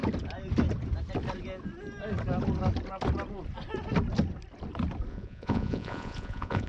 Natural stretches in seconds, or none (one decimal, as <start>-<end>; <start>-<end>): 0.0-5.1